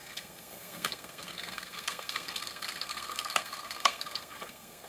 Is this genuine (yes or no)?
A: no